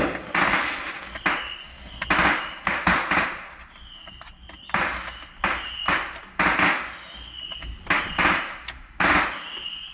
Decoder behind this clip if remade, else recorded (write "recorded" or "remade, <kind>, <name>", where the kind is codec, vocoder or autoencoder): recorded